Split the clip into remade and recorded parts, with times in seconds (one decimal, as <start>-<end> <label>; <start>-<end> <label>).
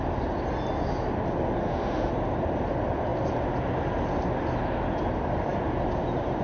0.0-1.6 recorded; 1.6-2.1 remade; 2.1-6.4 recorded